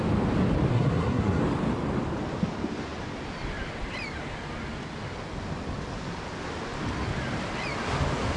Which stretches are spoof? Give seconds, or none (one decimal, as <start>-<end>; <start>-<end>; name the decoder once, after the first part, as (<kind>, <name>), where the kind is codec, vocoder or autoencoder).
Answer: 0.7-1.4 (codec, SNAC)